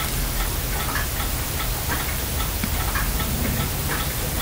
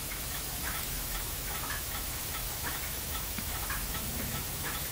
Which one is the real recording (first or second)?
first